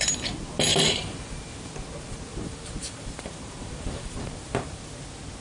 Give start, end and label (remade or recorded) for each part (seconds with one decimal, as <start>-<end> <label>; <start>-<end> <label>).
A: 0.0-0.7 recorded; 0.7-1.7 remade; 1.7-2.3 recorded; 2.3-4.8 remade; 4.8-5.4 recorded